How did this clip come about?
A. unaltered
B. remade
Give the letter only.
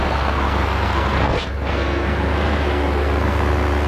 B